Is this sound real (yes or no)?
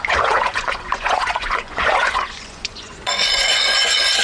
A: no